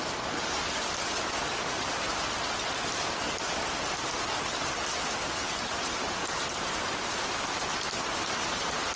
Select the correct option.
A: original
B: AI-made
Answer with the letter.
A